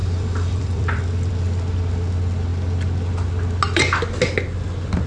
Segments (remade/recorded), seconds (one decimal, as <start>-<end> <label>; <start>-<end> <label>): 0.0-1.3 remade; 1.3-5.1 recorded